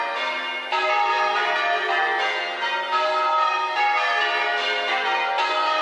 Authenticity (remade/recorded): recorded